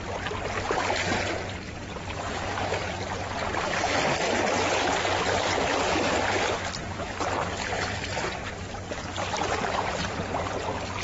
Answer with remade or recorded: recorded